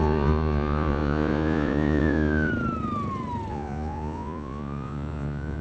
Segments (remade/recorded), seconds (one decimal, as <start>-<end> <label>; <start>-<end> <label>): 0.0-2.5 remade; 2.5-3.5 recorded; 3.5-5.6 remade